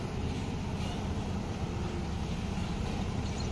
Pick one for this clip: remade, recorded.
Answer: remade